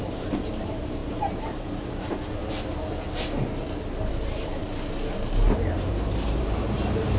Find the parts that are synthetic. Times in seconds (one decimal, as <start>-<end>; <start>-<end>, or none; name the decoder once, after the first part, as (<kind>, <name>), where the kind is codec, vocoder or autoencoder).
0.0-2.4 (vocoder, BigVGAN v2); 4.1-7.2